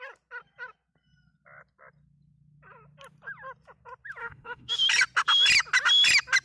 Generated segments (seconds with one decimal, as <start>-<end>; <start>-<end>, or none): 4.2-4.7